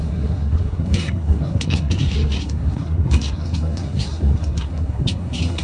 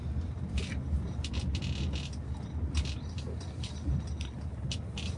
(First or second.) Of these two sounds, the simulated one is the first